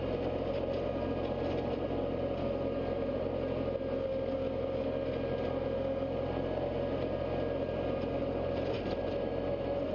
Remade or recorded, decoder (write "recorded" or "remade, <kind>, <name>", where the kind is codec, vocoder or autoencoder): recorded